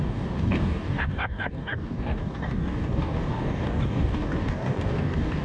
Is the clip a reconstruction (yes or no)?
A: yes